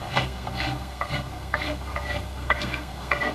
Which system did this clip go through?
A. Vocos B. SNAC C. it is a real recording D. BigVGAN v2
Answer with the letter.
B